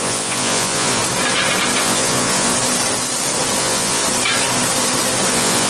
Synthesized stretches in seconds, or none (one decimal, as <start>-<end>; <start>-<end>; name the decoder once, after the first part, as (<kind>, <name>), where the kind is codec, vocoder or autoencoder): 0.0-1.0 (vocoder, Vocos); 1.8-2.5; 3.6-4.0; 5.3-5.7